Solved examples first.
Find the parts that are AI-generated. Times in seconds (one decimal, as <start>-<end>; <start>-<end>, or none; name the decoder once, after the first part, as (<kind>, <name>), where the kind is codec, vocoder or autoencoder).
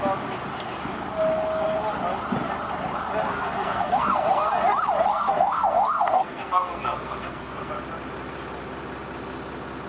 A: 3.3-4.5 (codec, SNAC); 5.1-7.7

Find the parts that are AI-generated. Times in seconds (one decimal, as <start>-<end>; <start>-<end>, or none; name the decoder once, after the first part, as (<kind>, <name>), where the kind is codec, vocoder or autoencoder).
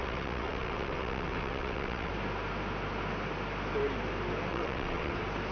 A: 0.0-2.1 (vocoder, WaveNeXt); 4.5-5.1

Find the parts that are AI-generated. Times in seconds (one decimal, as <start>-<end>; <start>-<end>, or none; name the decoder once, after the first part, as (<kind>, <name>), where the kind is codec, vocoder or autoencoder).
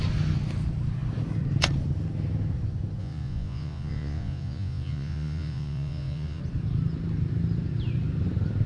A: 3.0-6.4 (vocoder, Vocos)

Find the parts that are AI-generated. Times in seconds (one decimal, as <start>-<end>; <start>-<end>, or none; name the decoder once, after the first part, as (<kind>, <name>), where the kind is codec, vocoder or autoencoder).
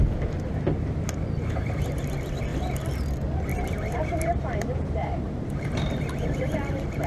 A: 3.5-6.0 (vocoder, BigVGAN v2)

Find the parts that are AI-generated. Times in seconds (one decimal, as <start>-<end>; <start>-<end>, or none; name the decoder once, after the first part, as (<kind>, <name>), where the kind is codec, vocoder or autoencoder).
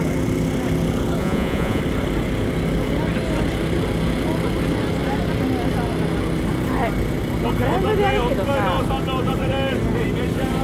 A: 1.2-1.8 (vocoder, Vocos)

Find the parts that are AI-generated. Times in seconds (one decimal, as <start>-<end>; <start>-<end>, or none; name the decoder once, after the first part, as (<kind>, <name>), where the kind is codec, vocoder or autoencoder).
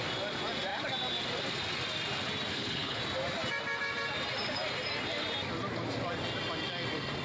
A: 2.5-3.0 (codec, HILCodec)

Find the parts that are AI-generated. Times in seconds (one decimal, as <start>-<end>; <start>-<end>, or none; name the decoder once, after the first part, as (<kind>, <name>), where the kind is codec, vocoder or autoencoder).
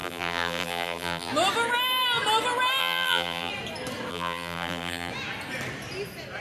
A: 0.0-1.3 (vocoder, BigVGAN v2); 2.8-3.5; 4.1-5.1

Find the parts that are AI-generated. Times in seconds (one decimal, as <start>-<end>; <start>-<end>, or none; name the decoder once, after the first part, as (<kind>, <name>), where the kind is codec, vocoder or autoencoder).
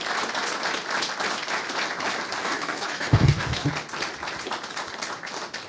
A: 2.4-3.7 (codec, DAC)